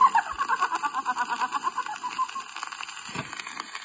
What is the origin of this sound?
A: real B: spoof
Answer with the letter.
B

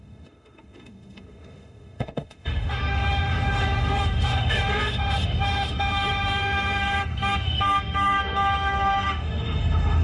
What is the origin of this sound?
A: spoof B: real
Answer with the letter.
A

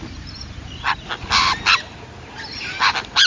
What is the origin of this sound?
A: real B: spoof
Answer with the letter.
A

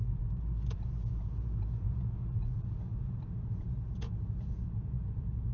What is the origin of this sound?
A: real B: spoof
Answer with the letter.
B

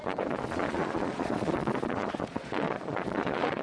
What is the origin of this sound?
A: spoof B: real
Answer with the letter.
A